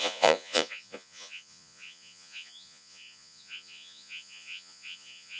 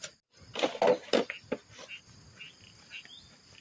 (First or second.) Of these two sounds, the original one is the second